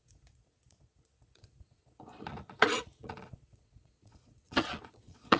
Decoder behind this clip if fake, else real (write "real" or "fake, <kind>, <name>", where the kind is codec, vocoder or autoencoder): fake, vocoder, Vocos